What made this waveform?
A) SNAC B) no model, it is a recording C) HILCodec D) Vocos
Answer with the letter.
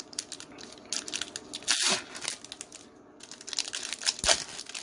B